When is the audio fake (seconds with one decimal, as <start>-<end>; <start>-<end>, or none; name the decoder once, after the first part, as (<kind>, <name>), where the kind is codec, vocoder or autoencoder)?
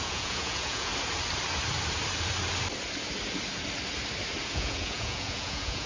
0.0-0.9 (vocoder, Vocos); 4.4-5.9